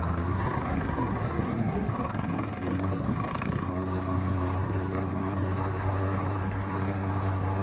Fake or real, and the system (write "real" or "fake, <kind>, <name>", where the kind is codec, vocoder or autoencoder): fake, codec, SNAC